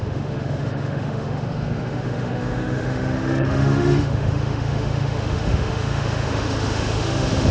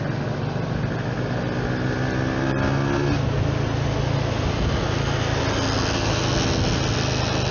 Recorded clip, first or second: second